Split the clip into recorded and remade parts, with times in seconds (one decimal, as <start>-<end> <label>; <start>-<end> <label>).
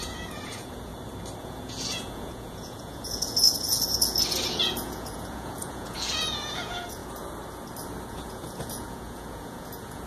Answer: 0.0-0.9 remade; 0.9-1.4 recorded; 1.4-7.0 remade; 7.0-8.1 recorded; 8.1-10.1 remade